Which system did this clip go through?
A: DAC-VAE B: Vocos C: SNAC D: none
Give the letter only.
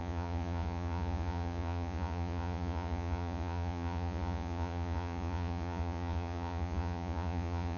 B